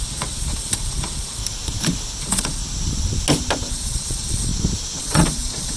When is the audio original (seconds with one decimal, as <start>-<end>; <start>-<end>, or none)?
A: 1.4-2.2; 2.6-3.7; 4.5-5.0